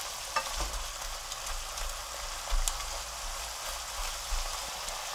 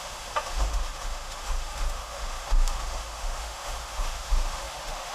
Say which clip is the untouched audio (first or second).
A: first